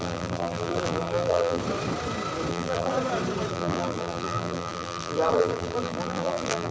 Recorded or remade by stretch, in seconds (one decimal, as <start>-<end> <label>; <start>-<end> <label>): 0.0-1.6 remade; 1.6-2.5 recorded; 2.5-2.9 remade; 2.9-3.5 recorded; 3.5-6.7 remade